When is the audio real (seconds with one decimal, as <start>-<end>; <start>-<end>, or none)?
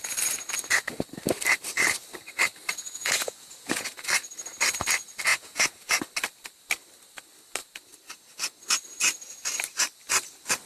0.0-2.7; 4.1-5.3; 6.0-10.7